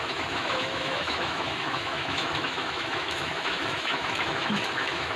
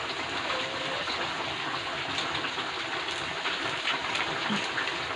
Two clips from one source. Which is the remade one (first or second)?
first